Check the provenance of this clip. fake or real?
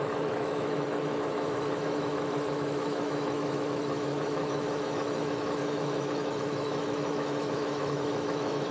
fake